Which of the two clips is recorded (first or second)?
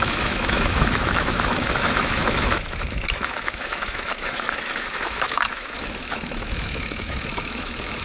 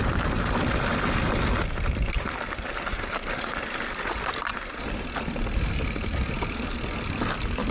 second